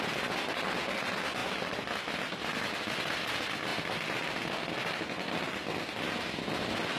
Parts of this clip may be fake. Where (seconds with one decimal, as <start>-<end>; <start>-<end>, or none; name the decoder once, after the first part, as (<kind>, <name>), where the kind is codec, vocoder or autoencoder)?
none